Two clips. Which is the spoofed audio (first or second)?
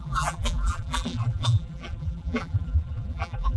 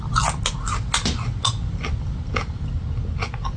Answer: first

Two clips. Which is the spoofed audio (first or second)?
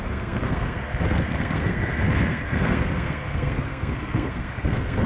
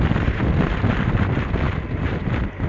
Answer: first